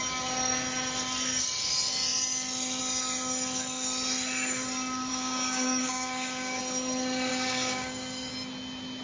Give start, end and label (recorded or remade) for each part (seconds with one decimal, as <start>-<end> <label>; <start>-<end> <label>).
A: 0.0-5.1 recorded; 5.1-6.6 remade; 6.6-7.3 recorded; 7.3-8.3 remade; 8.3-9.0 recorded